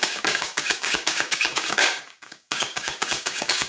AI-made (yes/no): yes